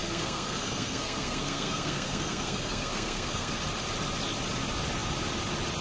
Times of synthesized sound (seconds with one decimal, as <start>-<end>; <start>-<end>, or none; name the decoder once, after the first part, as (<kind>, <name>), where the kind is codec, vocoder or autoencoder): 0.0-3.5 (codec, SNAC)